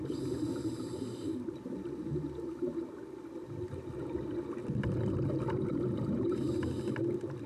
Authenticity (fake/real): real